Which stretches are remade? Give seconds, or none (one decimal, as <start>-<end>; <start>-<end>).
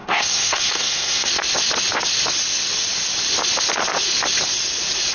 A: 0.0-1.3